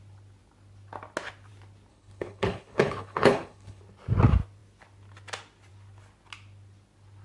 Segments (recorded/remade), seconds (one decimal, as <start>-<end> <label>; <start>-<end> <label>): 0.0-1.9 recorded; 1.9-3.8 remade; 3.8-7.2 recorded